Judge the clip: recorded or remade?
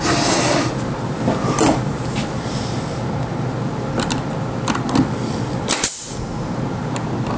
recorded